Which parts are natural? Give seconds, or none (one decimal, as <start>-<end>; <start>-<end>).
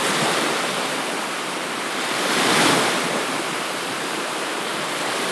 0.0-1.6; 4.8-5.3